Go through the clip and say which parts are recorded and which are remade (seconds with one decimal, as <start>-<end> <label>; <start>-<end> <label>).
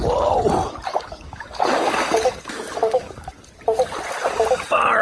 0.0-0.9 recorded; 0.9-3.3 remade; 3.3-5.0 recorded